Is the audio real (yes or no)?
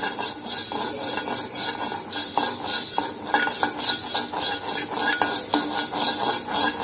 yes